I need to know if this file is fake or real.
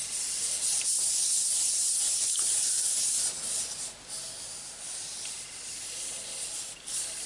real